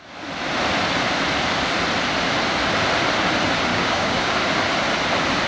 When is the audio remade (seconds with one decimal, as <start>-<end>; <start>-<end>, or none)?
3.7-4.3